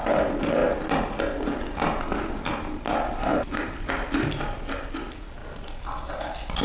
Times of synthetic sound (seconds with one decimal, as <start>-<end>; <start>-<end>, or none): 0.0-0.6; 2.3-5.4; 6.1-6.6